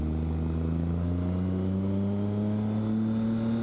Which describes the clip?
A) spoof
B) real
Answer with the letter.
B